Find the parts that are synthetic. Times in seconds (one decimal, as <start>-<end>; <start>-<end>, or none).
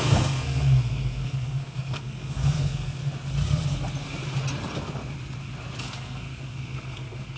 0.0-3.0; 5.8-7.4